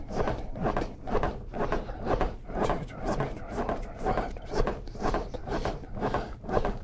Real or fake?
real